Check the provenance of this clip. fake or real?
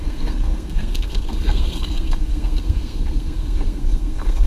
fake